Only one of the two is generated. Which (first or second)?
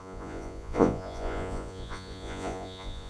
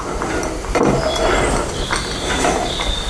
first